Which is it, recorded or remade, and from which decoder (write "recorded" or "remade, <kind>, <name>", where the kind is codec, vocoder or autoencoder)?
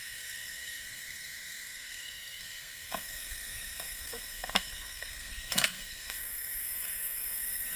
remade, codec, SNAC